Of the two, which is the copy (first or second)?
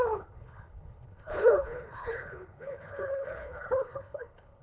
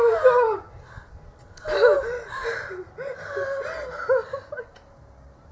first